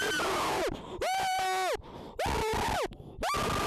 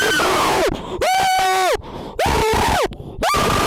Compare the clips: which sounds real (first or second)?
first